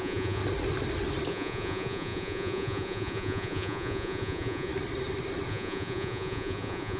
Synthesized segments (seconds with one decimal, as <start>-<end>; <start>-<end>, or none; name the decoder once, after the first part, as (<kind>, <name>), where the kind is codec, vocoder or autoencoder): 0.0-0.4 (vocoder, Vocos); 1.3-4.7; 5.5-7.0

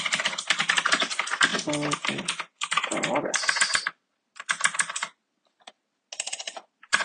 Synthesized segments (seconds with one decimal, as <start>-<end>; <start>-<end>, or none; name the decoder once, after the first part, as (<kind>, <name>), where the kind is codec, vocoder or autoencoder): none

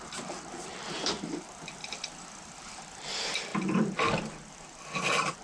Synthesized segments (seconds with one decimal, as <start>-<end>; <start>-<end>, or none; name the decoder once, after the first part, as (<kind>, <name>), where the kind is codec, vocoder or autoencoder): 0.0-1.8 (vocoder, BigVGAN v2); 2.6-5.4